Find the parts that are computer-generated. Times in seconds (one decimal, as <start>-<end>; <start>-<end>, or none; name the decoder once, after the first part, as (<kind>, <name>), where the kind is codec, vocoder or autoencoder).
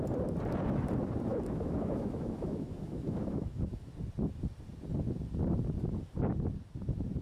1.3-3.9 (autoencoder, DAC-VAE)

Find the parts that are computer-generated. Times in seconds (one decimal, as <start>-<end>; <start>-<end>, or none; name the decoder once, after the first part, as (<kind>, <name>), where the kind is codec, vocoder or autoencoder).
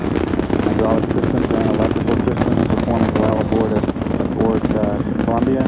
0.0-0.5 (autoencoder, DAC-VAE); 2.6-3.3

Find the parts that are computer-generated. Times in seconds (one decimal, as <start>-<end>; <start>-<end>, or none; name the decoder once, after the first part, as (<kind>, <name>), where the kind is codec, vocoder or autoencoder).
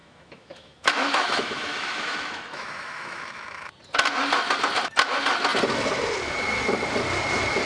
0.0-3.7 (autoencoder, DAC-VAE)